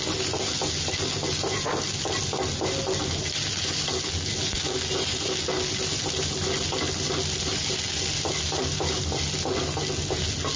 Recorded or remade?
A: recorded